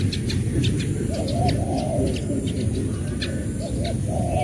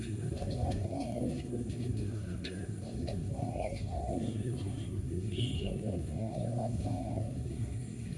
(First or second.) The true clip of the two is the first